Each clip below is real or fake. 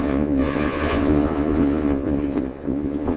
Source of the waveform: fake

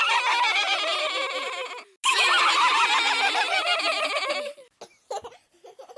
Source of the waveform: real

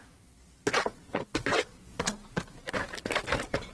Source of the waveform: real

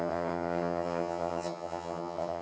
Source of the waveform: fake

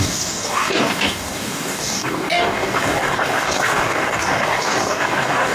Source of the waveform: fake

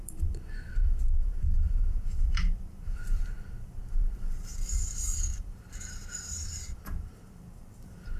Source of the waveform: fake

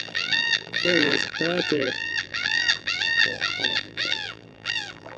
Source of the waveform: fake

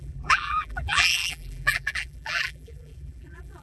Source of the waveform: fake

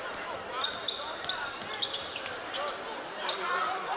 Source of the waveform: fake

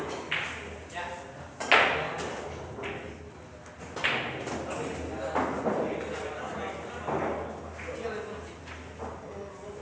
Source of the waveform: real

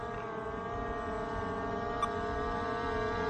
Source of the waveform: real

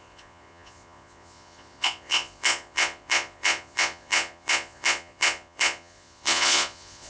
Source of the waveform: fake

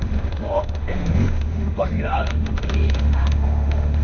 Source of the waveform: fake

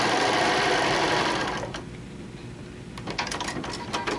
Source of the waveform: real